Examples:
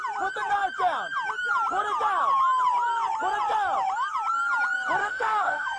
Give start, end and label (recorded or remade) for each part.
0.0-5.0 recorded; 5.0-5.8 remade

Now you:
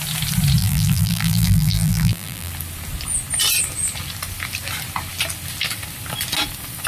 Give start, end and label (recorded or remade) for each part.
0.0-0.6 recorded; 0.6-2.5 remade; 2.5-6.9 recorded

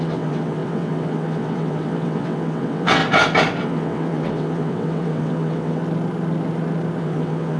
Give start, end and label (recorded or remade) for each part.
0.0-3.0 remade; 3.0-3.6 recorded; 3.6-5.8 remade; 5.8-7.0 recorded; 7.0-7.6 remade